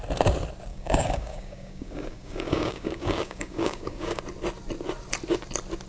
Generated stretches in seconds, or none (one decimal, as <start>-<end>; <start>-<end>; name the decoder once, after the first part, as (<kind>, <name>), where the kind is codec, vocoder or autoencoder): 0.7-4.2 (codec, DAC)